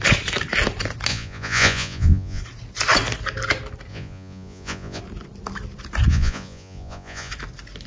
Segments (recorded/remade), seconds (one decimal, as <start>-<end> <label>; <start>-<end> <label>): 0.0-1.1 recorded; 1.1-2.4 remade; 2.4-3.9 recorded; 3.9-5.0 remade; 5.0-6.1 recorded; 6.1-7.3 remade; 7.3-7.9 recorded